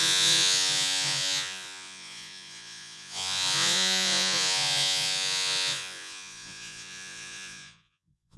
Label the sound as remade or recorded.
remade